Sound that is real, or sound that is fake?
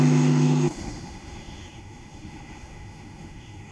fake